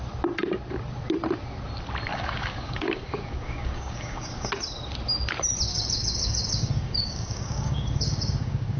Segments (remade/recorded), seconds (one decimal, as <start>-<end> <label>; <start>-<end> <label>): 0.0-2.1 recorded; 2.1-4.5 remade; 4.5-5.7 recorded; 5.7-8.8 remade